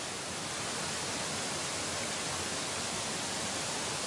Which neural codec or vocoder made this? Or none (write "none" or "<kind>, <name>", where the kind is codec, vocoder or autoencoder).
none